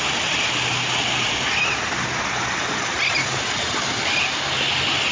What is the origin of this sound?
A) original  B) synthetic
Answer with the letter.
A